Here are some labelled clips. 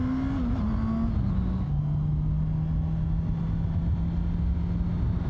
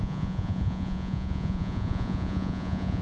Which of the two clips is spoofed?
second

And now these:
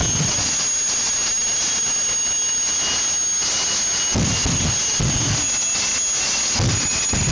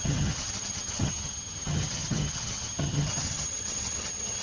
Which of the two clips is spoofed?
second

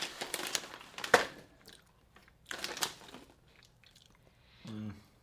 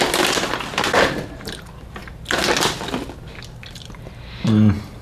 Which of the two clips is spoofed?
first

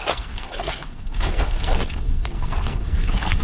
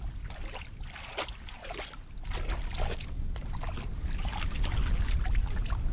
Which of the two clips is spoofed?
first